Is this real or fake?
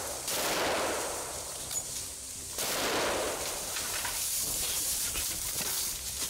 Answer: fake